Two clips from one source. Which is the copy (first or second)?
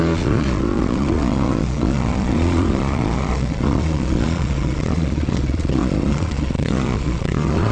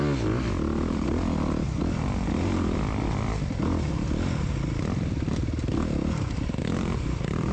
first